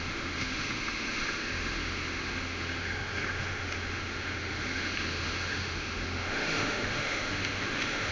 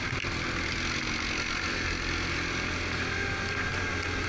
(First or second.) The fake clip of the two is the first